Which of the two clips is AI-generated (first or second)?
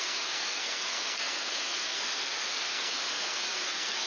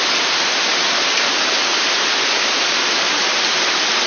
first